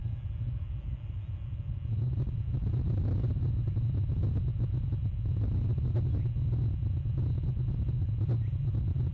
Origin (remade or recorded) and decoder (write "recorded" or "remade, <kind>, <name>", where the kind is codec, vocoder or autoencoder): recorded